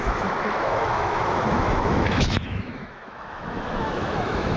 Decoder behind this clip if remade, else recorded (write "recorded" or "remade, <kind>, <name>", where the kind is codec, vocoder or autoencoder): remade, autoencoder, DAC-VAE